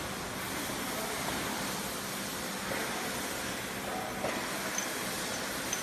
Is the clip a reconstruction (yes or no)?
no